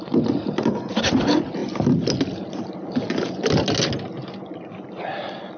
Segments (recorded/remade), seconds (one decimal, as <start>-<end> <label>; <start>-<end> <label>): 0.0-5.6 recorded